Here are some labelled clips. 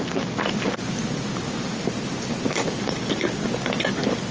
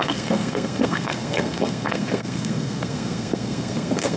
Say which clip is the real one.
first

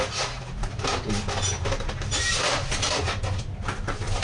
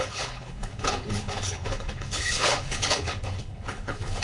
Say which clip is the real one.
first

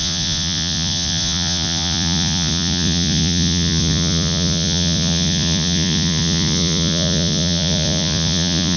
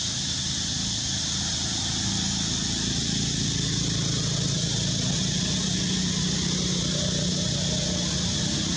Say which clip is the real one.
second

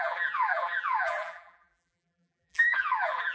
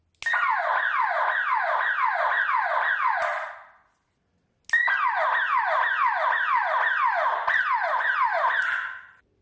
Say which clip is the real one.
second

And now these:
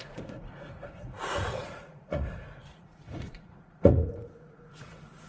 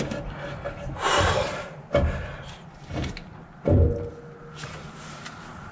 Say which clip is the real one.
second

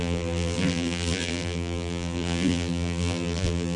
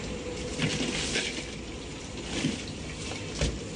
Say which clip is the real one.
second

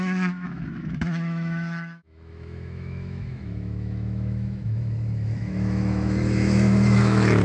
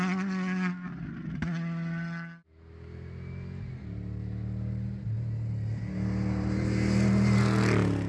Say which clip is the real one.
second